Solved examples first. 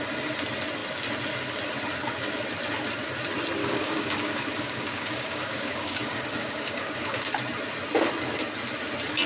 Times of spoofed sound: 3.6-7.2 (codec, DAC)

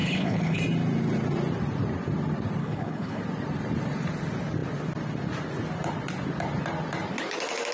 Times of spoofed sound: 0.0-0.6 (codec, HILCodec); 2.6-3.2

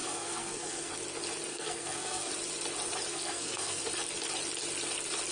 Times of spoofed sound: 0.0-0.9 (codec, SNAC); 1.5-2.3; 3.1-3.8

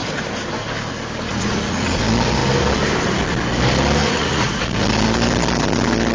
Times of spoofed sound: 1.3-2.0 (vocoder, Vocos); 4.0-4.6